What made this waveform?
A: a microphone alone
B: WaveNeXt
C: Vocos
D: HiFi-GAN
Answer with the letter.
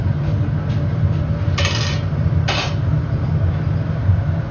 A